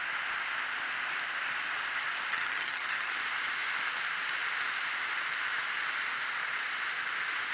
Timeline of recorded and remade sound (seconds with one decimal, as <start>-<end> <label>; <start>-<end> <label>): 0.0-2.3 recorded; 2.3-3.1 remade; 3.1-7.5 recorded